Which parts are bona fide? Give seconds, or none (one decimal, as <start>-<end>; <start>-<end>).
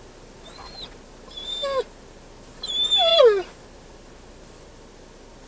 0.0-5.5